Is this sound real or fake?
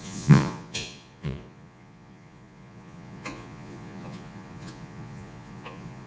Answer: fake